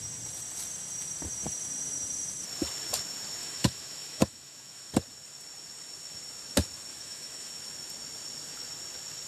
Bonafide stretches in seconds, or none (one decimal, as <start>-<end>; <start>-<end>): 0.0-3.4; 4.9-6.9; 7.5-9.3